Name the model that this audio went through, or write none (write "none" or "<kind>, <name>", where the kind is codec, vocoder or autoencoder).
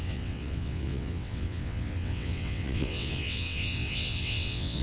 vocoder, WaveNeXt